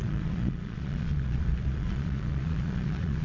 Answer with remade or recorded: remade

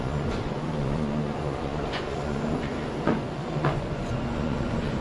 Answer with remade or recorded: remade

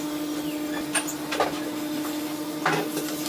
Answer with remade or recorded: recorded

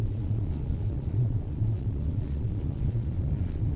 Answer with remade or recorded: remade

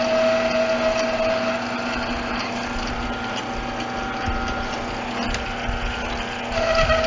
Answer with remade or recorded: recorded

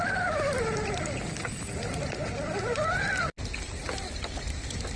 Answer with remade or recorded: recorded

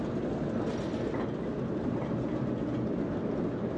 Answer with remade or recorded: recorded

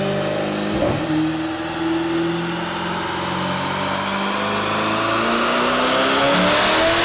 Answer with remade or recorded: recorded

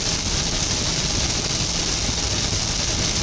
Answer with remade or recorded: recorded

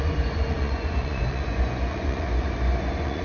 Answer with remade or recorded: remade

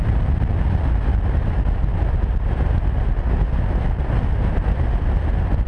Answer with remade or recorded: recorded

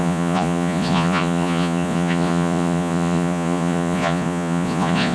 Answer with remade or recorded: remade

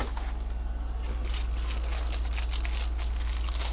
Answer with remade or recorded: recorded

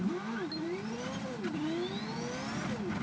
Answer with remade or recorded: recorded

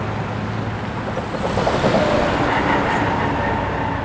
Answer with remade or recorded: recorded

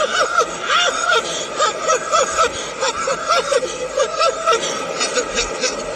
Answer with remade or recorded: recorded